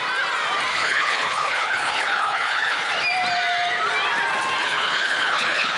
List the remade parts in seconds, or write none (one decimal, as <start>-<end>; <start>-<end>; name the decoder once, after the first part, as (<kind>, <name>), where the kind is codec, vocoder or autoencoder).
0.7-2.9 (codec, HILCodec); 4.6-5.8